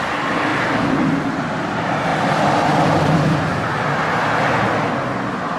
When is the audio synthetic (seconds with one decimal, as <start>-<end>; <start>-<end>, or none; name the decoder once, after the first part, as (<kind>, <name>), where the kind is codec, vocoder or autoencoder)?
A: none